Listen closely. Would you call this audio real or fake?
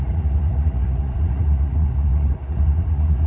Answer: fake